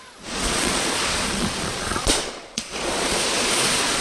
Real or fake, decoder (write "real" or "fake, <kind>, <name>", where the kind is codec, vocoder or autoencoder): fake, vocoder, Vocos